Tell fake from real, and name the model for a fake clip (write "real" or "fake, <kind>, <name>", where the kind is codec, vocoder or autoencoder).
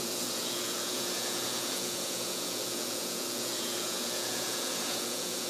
fake, vocoder, Vocos